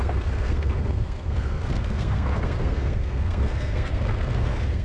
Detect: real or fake fake